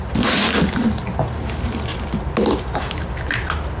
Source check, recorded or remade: recorded